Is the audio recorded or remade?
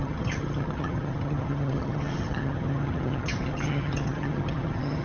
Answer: remade